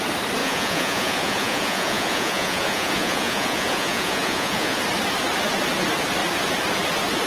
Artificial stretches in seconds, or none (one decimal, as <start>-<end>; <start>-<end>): 0.4-4.8